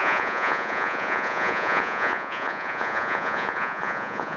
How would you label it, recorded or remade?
remade